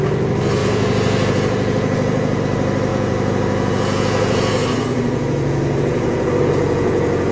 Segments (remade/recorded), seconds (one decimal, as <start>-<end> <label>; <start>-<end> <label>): 0.0-0.6 recorded; 0.6-2.4 remade; 2.4-2.9 recorded; 2.9-7.3 remade